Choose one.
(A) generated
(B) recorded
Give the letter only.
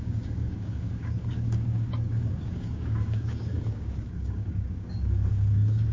A